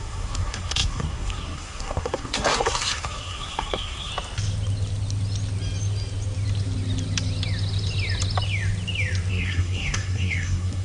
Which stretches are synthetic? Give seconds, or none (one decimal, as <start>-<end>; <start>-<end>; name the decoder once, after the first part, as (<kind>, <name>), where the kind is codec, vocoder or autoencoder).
0.0-4.1 (codec, SNAC); 9.3-10.8